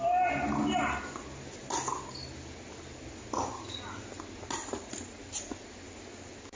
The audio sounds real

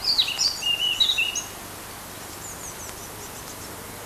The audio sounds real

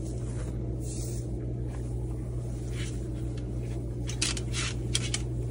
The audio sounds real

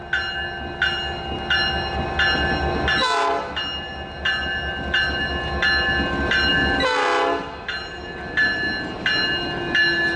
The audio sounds real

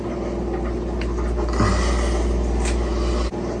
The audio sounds real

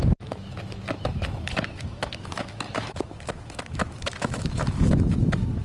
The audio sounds fake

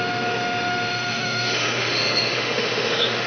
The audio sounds fake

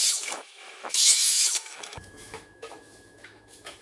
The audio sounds fake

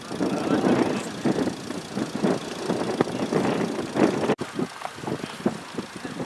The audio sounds real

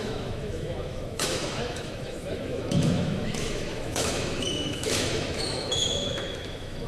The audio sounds fake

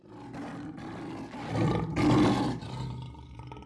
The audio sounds real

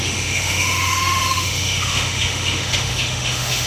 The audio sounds fake